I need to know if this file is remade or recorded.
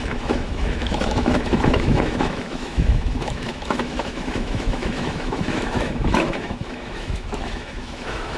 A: remade